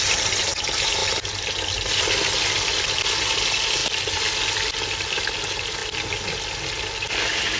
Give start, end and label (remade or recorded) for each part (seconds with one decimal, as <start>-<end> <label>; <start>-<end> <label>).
0.0-7.6 recorded